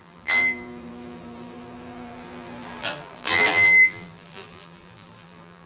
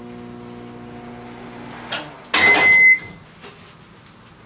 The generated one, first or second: first